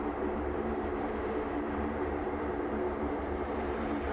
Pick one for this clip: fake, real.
fake